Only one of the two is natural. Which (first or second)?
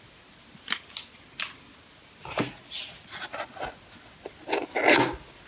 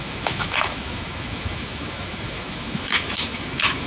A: first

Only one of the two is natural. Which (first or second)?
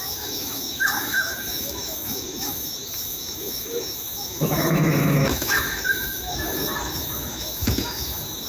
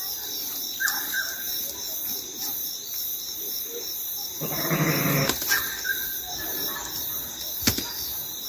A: second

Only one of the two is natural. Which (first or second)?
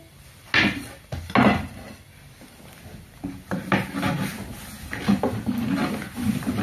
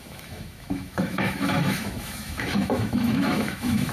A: first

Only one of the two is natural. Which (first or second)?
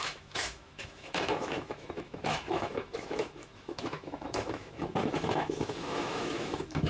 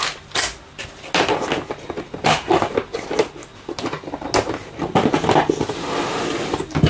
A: second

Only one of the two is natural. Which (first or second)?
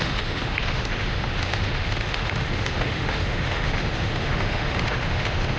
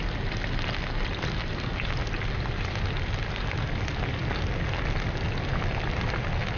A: second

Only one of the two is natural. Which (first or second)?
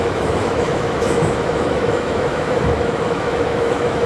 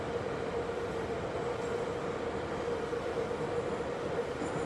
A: second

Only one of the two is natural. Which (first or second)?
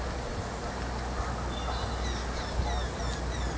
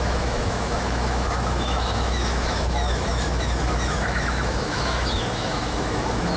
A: first